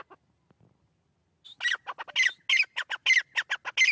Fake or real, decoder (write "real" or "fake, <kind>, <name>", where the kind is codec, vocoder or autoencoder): real